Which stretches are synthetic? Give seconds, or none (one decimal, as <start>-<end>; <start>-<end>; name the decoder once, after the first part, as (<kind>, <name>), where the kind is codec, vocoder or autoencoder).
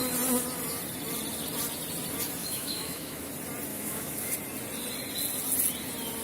2.4-3.3 (autoencoder, DAC-VAE); 3.7-4.3